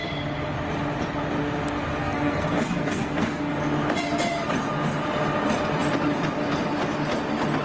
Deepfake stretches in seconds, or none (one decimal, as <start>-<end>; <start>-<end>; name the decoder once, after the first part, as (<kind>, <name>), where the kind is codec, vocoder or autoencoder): 2.0-3.5 (codec, SNAC)